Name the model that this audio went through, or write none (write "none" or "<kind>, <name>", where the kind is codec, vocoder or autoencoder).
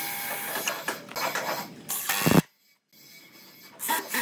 none